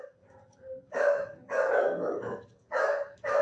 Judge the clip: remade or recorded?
remade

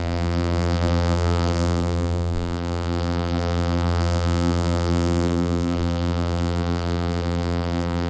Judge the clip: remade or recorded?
remade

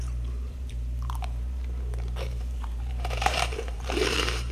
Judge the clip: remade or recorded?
remade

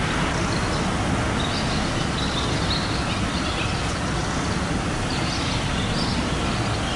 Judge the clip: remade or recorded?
recorded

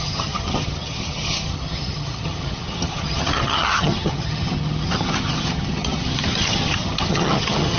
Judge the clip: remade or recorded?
remade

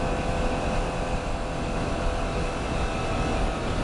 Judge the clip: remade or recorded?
recorded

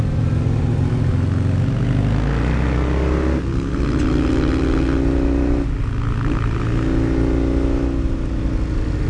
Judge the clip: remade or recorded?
recorded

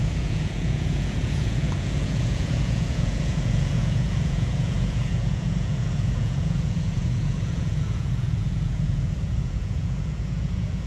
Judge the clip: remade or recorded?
remade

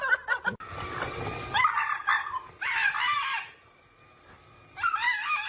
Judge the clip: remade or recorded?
recorded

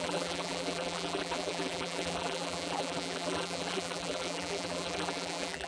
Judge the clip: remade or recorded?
remade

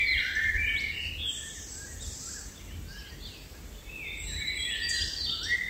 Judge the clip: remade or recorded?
recorded